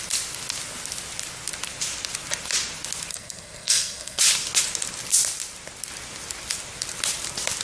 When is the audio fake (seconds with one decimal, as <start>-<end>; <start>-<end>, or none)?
3.1-4.2